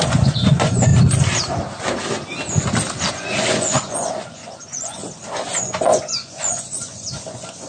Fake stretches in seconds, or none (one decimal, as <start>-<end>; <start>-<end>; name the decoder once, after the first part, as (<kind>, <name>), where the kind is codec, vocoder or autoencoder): 0.0-0.9 (vocoder, Vocos); 3.1-5.0; 5.6-7.7